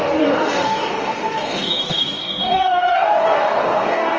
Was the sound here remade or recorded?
remade